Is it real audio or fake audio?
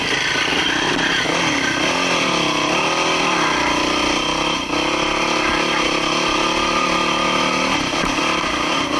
real